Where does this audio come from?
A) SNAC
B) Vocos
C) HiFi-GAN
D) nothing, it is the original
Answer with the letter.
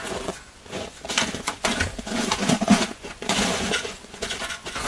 B